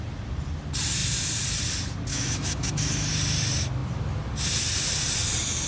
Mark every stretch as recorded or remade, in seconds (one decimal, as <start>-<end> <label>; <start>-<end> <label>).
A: 0.0-2.1 recorded; 2.1-2.8 remade; 2.8-5.7 recorded